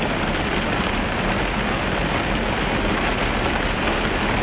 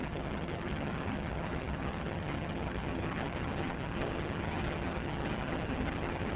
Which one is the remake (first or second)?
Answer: second